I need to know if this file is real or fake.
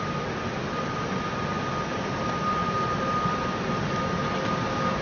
real